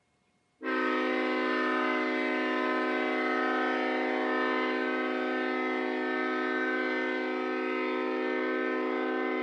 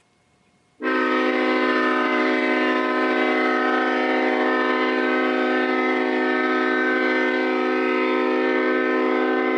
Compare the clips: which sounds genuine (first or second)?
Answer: first